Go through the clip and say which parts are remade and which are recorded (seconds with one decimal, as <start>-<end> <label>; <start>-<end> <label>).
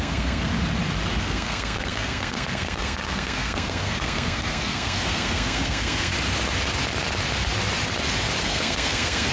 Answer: 0.0-0.5 remade; 0.5-1.2 recorded; 1.2-6.1 remade; 6.1-8.4 recorded; 8.4-9.3 remade